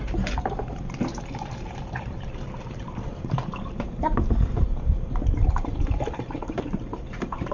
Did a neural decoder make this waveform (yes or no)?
yes